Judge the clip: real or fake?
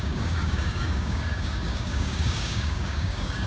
fake